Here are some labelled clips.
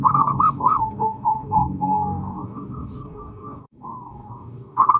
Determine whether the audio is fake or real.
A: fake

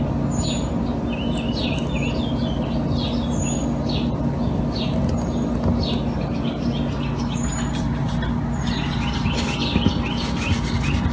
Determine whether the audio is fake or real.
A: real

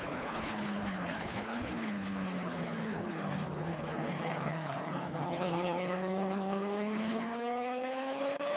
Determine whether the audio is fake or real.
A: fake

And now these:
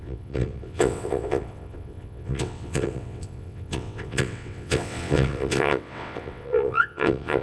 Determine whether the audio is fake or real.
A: fake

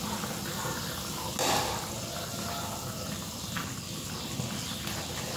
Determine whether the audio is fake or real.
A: real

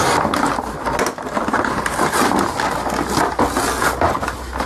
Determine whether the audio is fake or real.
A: real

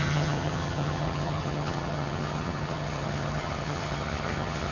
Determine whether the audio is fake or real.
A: fake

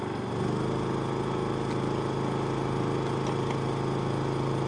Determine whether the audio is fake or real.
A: real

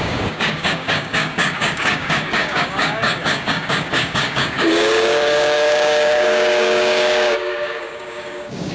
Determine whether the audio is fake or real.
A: fake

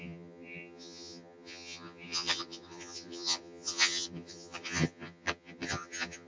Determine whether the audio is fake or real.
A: fake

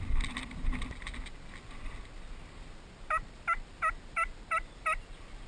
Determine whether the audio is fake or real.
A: real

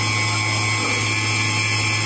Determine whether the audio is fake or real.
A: real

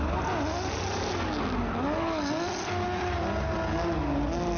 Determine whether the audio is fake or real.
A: real